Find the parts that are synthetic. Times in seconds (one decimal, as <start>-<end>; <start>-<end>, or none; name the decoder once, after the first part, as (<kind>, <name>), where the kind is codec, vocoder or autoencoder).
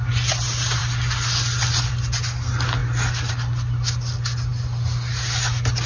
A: none